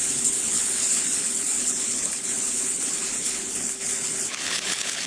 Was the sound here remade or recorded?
remade